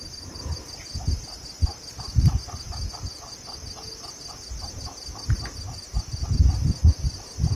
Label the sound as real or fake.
real